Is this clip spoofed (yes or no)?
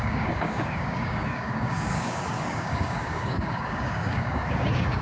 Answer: yes